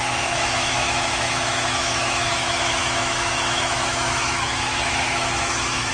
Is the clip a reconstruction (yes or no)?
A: yes